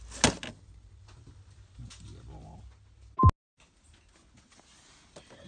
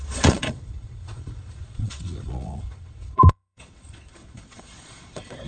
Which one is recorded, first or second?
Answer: first